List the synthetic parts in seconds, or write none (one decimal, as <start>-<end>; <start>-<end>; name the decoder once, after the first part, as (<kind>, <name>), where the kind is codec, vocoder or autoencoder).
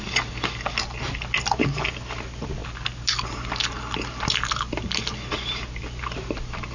none